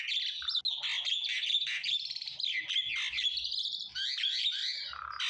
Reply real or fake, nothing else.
real